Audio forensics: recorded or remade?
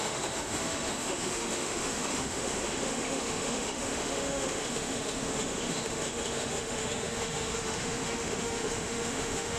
remade